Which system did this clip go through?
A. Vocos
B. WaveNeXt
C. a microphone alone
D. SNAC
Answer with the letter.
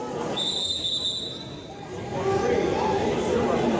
C